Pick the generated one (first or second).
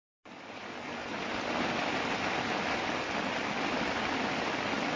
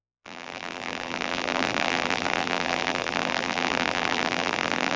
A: second